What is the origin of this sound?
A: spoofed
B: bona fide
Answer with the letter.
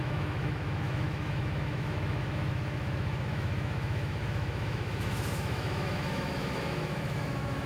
A